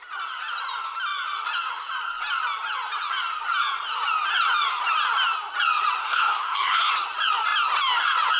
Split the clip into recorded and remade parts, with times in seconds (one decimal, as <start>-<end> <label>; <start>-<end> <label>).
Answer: 0.0-6.0 recorded; 6.0-6.9 remade; 6.9-8.4 recorded